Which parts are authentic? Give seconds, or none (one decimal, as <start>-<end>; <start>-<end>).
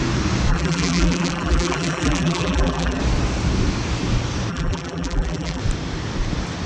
0.0-0.5; 3.0-4.5; 5.6-6.7